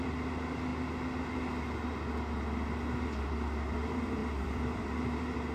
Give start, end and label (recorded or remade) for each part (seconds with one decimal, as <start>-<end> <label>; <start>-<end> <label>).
0.0-0.7 remade; 0.7-3.3 recorded; 3.3-5.5 remade